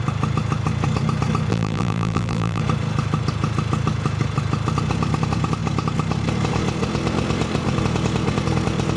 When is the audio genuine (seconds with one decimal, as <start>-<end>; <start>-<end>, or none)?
0.0-1.5; 2.6-9.0